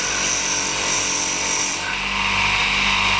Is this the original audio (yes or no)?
yes